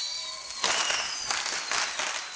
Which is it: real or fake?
real